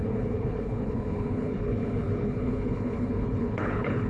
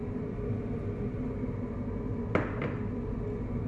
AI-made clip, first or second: first